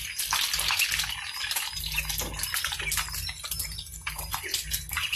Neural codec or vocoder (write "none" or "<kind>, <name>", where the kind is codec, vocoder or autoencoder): none